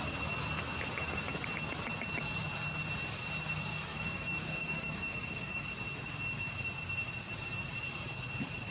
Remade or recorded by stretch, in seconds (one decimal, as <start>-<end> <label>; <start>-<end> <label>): 0.0-3.7 recorded; 3.7-5.6 remade; 5.6-8.7 recorded